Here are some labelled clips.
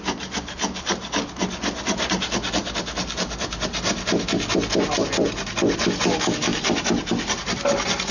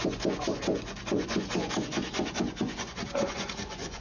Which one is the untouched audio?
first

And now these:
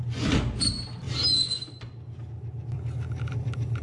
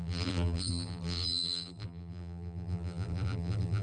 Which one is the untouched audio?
first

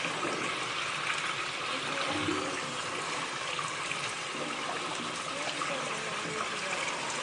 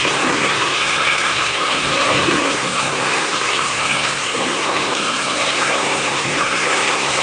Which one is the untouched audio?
first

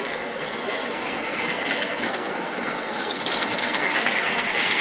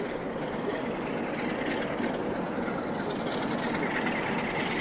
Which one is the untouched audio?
second